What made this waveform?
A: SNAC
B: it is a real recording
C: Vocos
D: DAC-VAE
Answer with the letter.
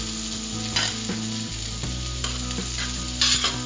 B